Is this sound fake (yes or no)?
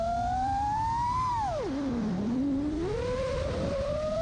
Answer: yes